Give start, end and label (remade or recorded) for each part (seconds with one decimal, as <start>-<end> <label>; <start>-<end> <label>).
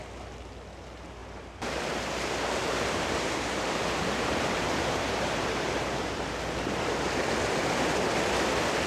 0.0-1.2 recorded; 1.2-6.3 remade; 6.3-7.4 recorded; 7.4-7.9 remade; 7.9-8.9 recorded